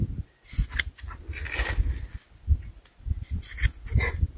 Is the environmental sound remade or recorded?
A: recorded